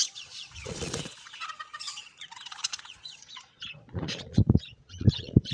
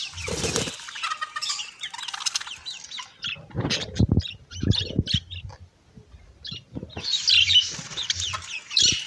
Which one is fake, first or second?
first